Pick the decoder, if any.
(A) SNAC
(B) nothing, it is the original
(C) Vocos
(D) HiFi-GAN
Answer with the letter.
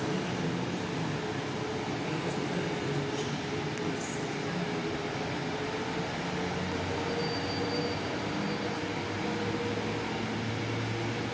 B